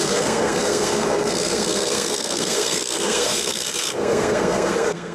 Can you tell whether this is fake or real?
fake